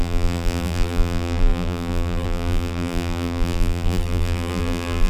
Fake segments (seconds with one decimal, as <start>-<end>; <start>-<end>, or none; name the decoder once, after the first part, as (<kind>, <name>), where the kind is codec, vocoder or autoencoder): 0.0-5.1 (vocoder, BigVGAN v2)